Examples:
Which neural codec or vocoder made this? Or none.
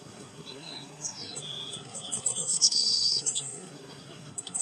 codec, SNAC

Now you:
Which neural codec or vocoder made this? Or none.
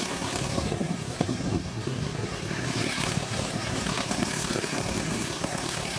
codec, SNAC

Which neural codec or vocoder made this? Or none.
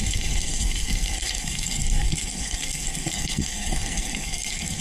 codec, SNAC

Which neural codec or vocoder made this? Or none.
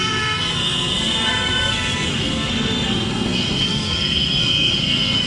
codec, SNAC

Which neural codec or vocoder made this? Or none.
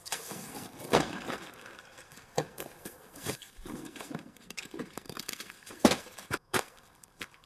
codec, SNAC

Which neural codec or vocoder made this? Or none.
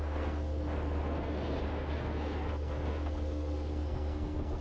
codec, SNAC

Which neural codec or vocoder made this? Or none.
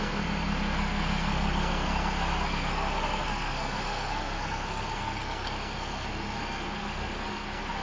codec, SNAC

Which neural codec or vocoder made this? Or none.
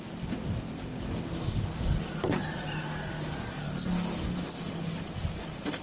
none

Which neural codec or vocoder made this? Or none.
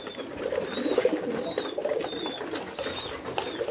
none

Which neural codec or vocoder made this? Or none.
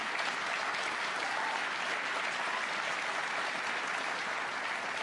none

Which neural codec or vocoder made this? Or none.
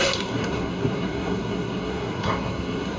codec, SNAC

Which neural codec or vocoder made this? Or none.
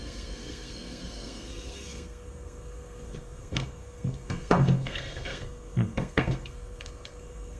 codec, SNAC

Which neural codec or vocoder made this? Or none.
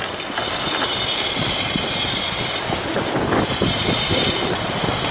none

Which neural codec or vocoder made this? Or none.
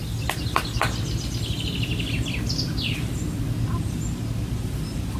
none